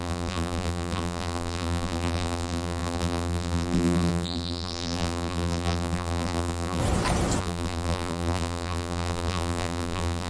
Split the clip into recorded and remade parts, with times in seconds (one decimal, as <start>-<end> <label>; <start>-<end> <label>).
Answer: 0.0-6.8 remade; 6.8-7.4 recorded; 7.4-10.3 remade